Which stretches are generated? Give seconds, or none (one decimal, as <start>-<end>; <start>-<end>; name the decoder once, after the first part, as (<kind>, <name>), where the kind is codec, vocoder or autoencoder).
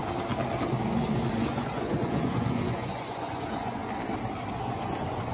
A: 1.3-3.8 (vocoder, Vocos); 4.5-5.3